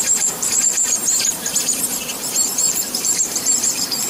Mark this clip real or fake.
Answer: fake